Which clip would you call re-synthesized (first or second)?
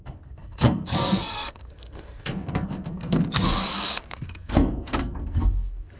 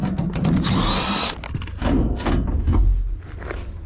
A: first